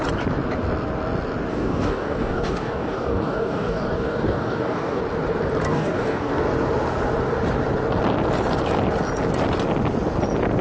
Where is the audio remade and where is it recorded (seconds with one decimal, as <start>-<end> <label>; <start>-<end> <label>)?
0.0-1.5 recorded; 1.5-5.0 remade; 5.0-5.7 recorded; 5.7-6.3 remade; 6.3-10.6 recorded